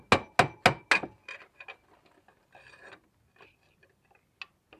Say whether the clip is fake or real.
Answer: real